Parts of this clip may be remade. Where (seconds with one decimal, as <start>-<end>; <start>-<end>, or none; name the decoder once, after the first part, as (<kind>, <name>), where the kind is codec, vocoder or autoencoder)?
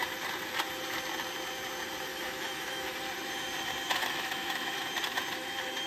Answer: 2.1-3.0 (autoencoder, DAC-VAE); 4.0-4.8